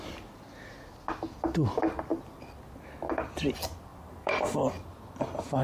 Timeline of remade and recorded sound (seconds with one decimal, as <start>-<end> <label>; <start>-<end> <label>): 0.0-3.9 recorded; 3.9-4.6 remade; 4.6-5.6 recorded